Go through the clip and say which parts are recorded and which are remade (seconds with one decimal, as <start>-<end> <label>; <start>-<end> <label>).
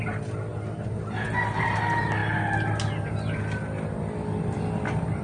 0.0-5.2 recorded